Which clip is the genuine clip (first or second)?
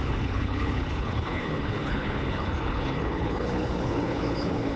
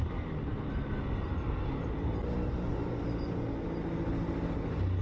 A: second